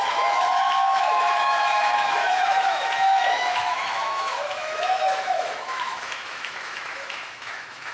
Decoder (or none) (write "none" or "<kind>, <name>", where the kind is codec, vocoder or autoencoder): autoencoder, DAC-VAE